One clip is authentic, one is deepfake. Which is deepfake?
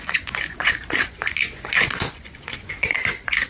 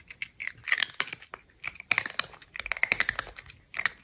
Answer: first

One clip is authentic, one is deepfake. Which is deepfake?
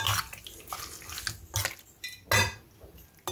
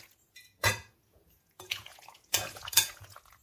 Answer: second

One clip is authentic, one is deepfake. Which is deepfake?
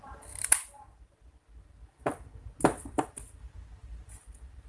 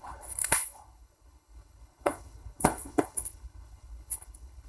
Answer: second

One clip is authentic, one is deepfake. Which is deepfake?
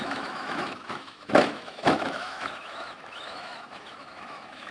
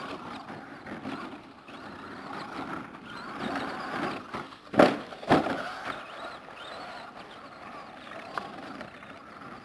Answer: first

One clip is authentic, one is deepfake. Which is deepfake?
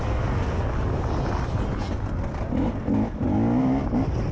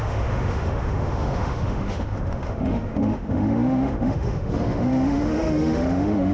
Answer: second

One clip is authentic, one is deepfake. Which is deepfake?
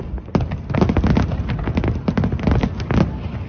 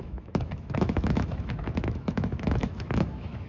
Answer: second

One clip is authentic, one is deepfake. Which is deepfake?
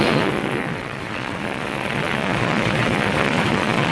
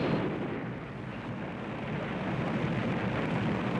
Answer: first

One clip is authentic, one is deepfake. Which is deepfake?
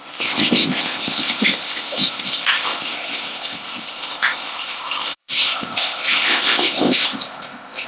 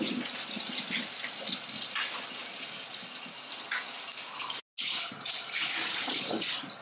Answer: first